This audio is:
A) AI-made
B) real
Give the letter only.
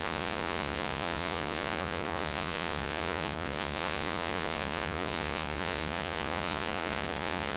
A